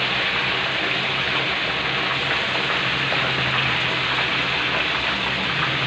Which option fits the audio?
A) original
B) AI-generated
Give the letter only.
A